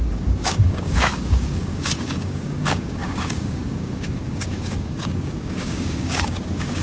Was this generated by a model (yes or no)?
yes